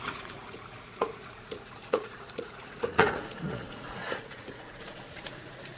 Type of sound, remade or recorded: remade